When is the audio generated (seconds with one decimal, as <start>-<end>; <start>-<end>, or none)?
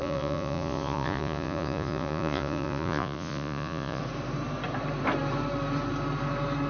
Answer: 0.0-4.0